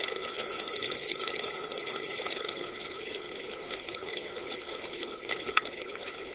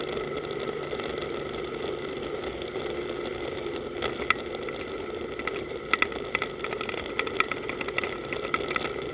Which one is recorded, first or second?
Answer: second